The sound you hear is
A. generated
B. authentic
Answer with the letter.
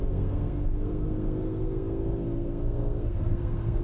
A